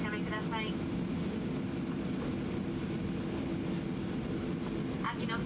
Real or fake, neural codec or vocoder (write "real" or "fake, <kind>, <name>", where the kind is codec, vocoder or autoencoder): real